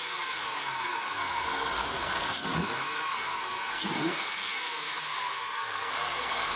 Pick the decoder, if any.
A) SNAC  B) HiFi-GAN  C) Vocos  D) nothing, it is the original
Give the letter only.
A